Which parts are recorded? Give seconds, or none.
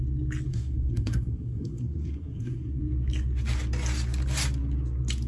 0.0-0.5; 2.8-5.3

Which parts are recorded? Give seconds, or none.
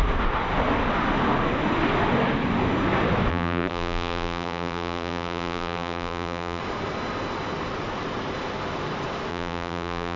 0.0-3.3; 6.6-9.3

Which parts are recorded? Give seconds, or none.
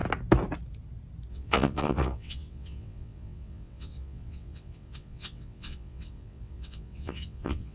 0.0-1.3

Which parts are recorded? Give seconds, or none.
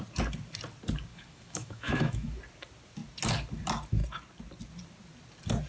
0.0-1.1; 2.4-5.7